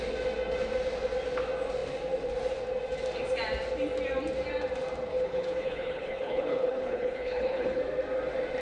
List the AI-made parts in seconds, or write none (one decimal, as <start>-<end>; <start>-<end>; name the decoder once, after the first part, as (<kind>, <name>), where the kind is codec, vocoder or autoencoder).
5.1-7.8 (codec, HILCodec)